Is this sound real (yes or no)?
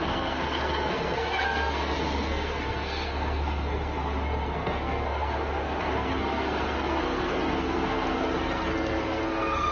no